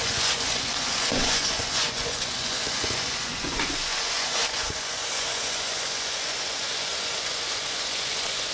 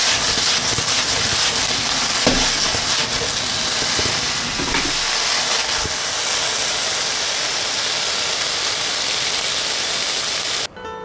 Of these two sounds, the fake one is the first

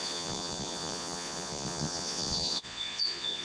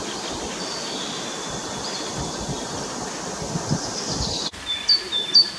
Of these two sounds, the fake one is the first